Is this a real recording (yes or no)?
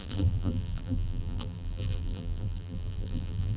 no